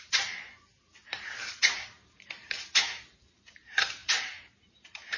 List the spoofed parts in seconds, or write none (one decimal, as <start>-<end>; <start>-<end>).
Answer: 0.0-5.2